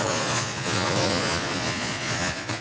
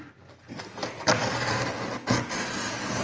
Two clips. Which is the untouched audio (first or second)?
second